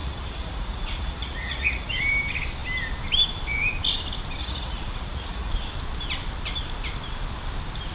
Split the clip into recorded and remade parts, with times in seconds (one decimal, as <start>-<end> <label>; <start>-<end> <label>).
0.0-1.9 remade; 1.9-4.4 recorded; 4.4-5.5 remade; 5.5-7.9 recorded